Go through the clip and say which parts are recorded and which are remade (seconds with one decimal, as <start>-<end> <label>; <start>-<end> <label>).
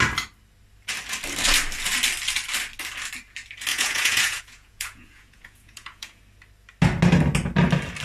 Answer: 0.0-3.7 recorded; 3.7-6.2 remade; 6.2-8.0 recorded